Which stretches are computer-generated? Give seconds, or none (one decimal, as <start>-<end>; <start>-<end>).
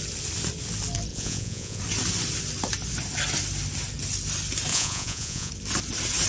1.1-1.8; 4.7-5.5